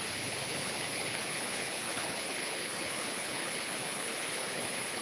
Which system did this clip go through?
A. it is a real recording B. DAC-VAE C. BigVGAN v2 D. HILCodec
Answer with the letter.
D